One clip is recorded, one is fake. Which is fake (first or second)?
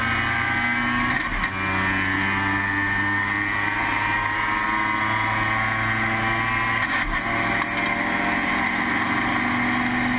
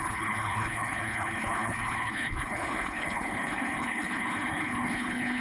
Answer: second